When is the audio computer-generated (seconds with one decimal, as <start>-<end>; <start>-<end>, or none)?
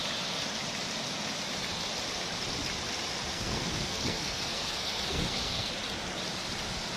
3.3-5.7